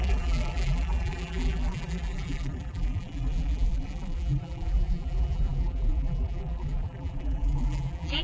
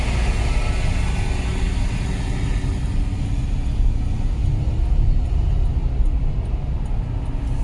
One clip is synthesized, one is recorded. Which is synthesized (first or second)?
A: first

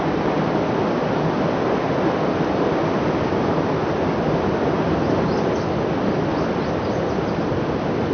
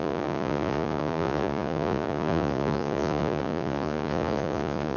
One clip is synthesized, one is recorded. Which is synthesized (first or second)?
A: second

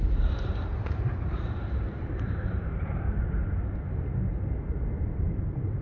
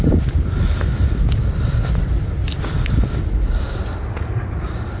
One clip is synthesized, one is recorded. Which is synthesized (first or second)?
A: first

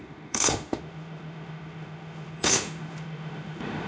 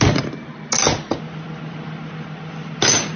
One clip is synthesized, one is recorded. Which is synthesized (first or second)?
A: first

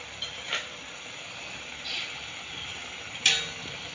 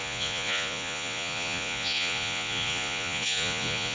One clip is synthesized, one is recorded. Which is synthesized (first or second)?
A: second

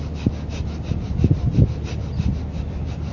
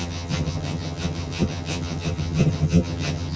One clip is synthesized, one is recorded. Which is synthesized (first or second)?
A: second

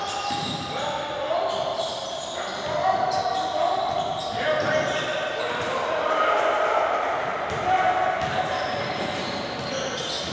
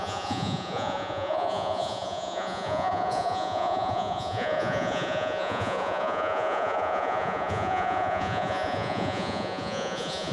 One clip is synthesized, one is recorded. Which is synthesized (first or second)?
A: second